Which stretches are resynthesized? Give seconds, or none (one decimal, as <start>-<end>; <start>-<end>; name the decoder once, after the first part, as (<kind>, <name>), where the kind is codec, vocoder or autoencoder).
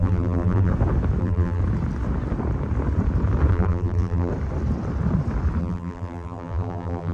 0.0-0.7 (vocoder, BigVGAN v2); 1.2-1.6; 3.5-4.3; 5.6-7.1